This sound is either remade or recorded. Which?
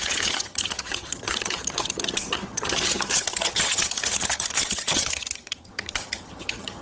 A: remade